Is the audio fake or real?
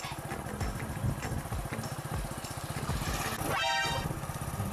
real